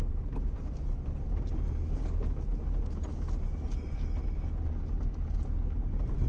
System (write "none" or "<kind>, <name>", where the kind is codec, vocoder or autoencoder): none